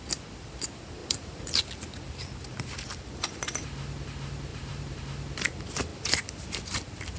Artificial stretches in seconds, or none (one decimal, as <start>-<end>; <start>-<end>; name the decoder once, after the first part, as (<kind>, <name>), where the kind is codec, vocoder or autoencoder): 1.0-1.6 (vocoder, BigVGAN v2); 4.5-5.0